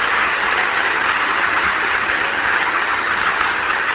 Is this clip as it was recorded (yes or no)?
no